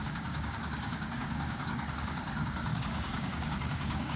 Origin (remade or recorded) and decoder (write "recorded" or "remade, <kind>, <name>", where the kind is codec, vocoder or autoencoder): remade, codec, DAC